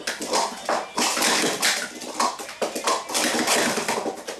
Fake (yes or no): no